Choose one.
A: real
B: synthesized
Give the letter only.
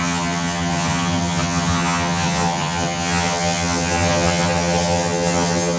B